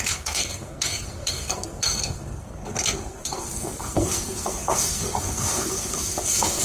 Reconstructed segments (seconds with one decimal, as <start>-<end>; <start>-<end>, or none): 0.0-6.6

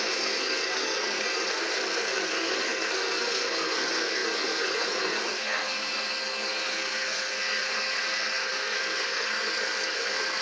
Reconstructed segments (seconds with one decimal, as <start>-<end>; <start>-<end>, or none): 0.0-10.4

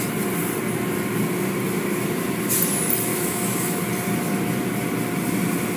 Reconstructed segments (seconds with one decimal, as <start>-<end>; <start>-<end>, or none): 3.1-3.8

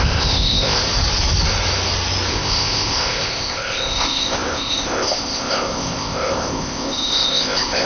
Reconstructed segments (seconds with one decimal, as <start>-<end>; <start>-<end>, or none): 0.0-0.8; 2.3-7.9

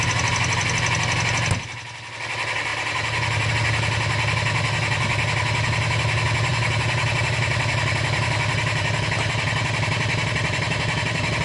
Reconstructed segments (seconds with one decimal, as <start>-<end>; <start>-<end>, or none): 2.7-3.5; 6.5-11.4

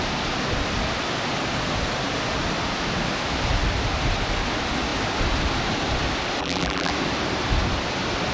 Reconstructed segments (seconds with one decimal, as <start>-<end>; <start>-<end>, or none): 6.4-6.9

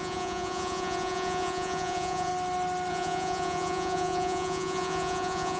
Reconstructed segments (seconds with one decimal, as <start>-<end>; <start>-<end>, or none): 0.0-2.3; 2.9-5.6